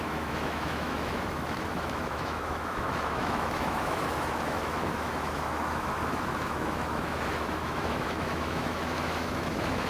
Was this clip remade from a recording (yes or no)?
yes